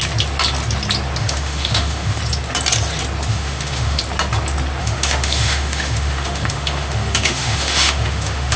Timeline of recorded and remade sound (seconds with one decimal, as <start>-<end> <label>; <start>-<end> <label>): 0.0-1.2 recorded; 1.2-2.2 remade; 2.2-3.3 recorded; 3.3-4.0 remade; 4.0-4.8 recorded; 4.8-8.6 remade